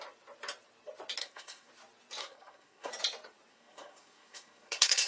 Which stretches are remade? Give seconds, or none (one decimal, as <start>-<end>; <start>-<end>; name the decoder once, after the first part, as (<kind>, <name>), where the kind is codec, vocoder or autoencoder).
1.2-1.7 (codec, SNAC); 2.2-2.9; 3.5-5.1